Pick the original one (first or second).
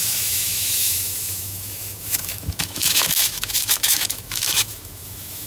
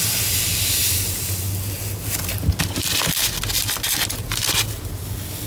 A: second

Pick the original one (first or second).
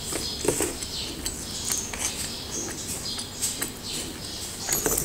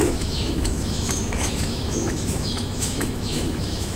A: first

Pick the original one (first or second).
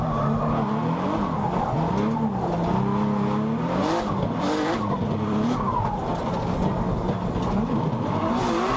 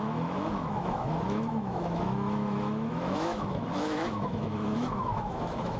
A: first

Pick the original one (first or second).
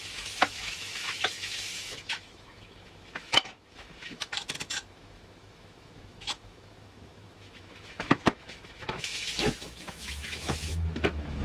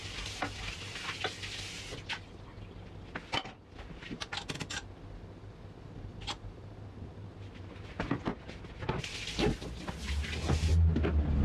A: second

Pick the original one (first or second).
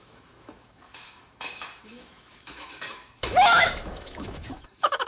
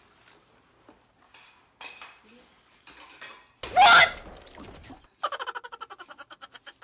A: second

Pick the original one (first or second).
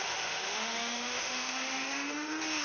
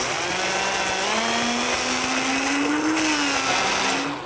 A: second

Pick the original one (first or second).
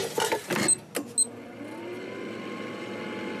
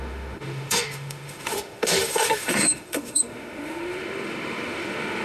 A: first